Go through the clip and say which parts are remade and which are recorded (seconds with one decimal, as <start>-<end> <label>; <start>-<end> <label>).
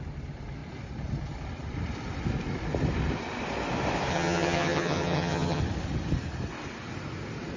0.0-4.1 recorded; 4.1-5.6 remade; 5.6-7.6 recorded